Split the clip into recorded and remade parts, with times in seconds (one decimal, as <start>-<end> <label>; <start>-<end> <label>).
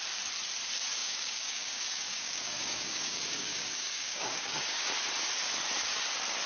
0.0-1.0 recorded; 1.0-4.9 remade; 4.9-6.5 recorded